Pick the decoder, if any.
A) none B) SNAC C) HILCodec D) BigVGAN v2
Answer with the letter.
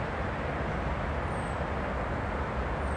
A